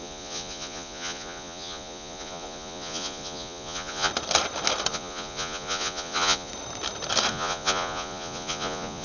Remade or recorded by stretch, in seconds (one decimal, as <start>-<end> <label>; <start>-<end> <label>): 0.0-4.1 remade; 4.1-4.9 recorded; 4.9-6.5 remade; 6.5-7.3 recorded; 7.3-9.0 remade